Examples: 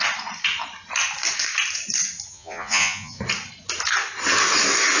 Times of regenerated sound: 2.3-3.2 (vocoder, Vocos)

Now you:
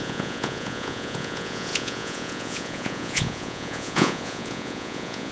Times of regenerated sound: 0.0-5.3 (vocoder, Vocos)